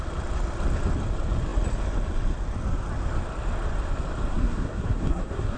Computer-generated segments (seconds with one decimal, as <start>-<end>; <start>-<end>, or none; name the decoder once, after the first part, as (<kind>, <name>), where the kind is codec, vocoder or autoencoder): 4.3-5.6 (codec, SNAC)